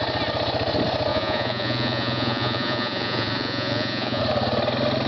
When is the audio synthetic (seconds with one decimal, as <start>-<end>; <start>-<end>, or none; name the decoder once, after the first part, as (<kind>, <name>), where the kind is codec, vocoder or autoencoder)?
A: 1.1-4.2 (vocoder, Vocos)